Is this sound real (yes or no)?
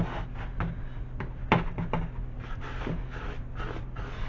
yes